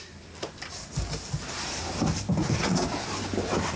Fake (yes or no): no